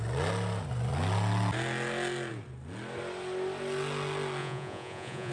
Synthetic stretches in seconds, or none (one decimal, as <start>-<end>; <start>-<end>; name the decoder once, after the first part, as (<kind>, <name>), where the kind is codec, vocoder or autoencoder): 4.4-5.3 (vocoder, Vocos)